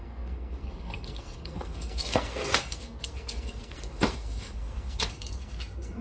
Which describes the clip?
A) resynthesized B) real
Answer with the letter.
A